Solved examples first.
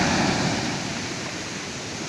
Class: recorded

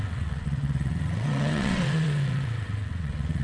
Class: remade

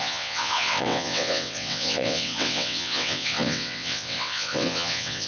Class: remade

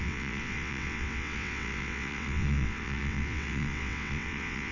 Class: remade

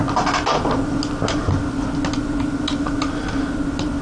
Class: recorded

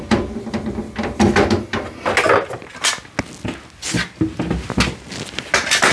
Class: recorded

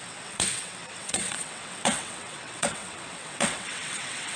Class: remade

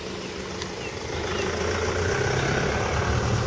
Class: recorded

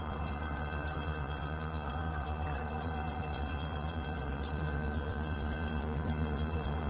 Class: remade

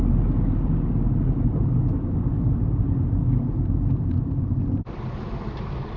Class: recorded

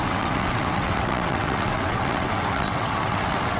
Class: remade